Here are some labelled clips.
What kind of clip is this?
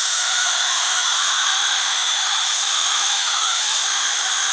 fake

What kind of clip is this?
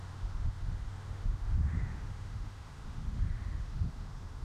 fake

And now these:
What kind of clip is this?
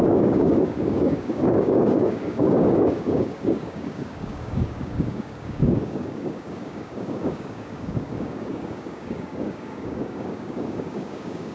fake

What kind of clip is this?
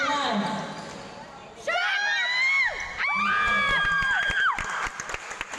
real